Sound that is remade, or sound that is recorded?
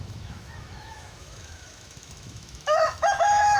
remade